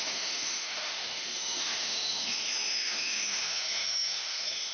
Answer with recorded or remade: remade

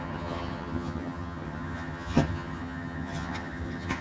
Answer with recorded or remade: remade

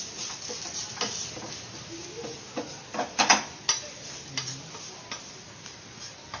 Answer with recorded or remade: recorded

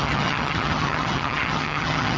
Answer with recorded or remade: remade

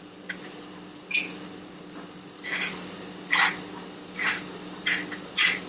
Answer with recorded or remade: recorded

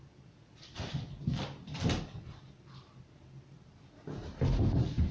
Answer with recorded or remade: remade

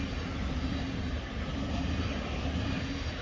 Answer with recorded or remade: recorded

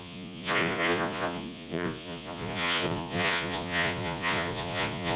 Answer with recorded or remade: remade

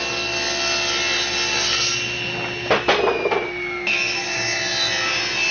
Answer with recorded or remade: recorded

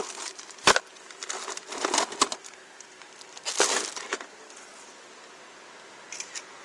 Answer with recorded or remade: recorded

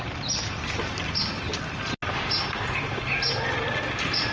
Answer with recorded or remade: recorded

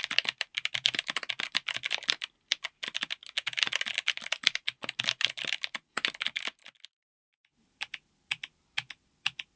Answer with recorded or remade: recorded